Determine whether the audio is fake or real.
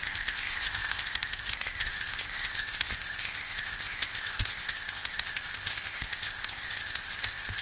fake